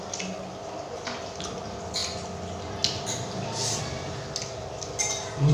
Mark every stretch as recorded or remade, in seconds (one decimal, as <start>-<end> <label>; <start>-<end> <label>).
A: 0.0-5.5 recorded